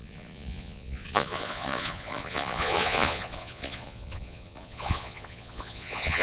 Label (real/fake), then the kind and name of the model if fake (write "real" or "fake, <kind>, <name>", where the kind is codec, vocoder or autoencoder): fake, vocoder, Vocos